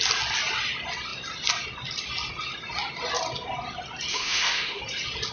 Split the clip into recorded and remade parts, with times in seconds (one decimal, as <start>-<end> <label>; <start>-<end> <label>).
0.0-4.1 recorded; 4.1-4.8 remade; 4.8-5.3 recorded